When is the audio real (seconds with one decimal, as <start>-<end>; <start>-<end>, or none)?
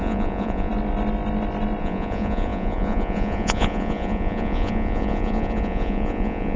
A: 0.7-1.8